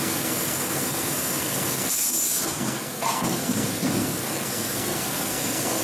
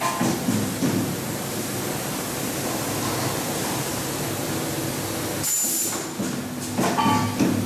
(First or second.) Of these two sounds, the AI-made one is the first